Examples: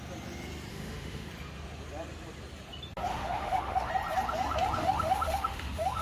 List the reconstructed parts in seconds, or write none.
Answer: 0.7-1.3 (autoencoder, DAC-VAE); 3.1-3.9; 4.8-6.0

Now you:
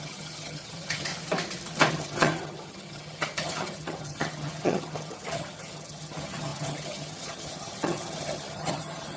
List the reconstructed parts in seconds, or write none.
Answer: 0.0-1.1 (vocoder, HiFi-GAN); 1.9-9.2

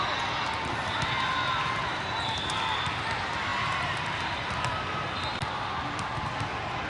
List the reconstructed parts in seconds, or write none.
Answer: none

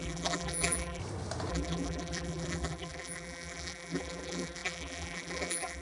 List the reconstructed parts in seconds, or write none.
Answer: 0.0-1.0 (vocoder, BigVGAN v2); 1.5-5.8

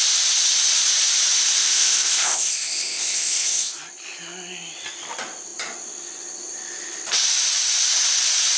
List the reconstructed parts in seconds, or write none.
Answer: 1.6-3.7 (codec, ZipCodec)

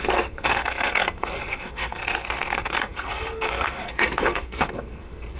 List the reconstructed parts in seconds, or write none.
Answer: 0.0-5.4 (codec, SNAC)

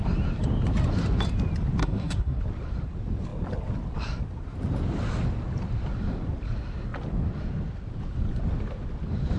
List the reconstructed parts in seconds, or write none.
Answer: 1.8-2.4 (codec, SNAC)

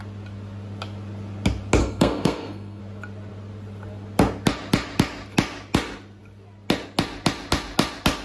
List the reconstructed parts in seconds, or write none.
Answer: 1.8-2.8 (codec, SNAC)